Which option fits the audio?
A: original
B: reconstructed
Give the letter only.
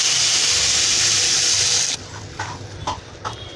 A